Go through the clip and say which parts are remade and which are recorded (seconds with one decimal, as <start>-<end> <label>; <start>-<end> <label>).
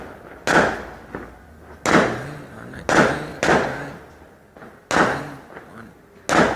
0.0-6.6 recorded